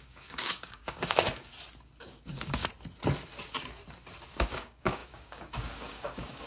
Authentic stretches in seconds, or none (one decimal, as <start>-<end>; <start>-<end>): 1.5-2.0; 2.6-4.3